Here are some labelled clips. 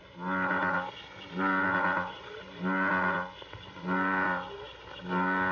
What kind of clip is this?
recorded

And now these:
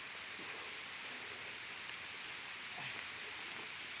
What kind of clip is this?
recorded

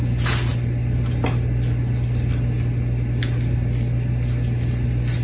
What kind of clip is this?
recorded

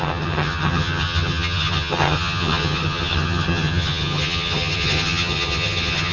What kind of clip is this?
remade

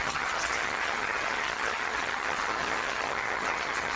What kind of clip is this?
remade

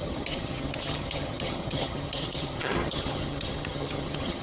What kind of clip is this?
remade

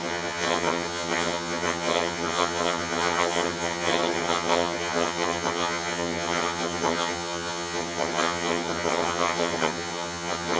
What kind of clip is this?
remade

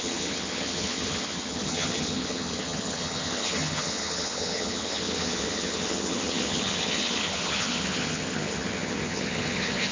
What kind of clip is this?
remade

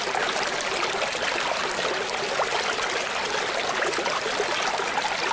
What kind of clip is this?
recorded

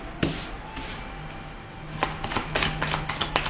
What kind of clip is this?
recorded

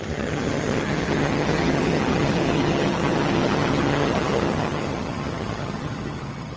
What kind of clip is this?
remade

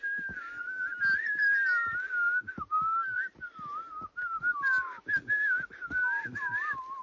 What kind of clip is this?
recorded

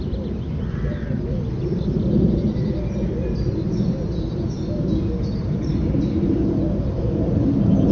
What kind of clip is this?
recorded